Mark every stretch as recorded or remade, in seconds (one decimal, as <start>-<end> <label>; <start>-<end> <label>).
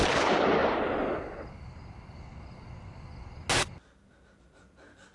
0.0-5.1 recorded